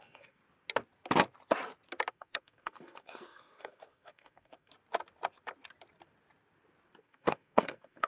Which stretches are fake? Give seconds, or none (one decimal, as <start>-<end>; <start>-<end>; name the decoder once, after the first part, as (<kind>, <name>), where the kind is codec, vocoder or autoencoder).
0.0-0.4 (codec, SNAC); 2.1-4.7; 7.0-8.1